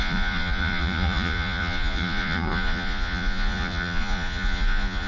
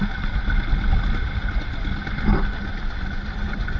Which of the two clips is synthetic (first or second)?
first